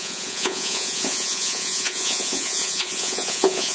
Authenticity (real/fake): fake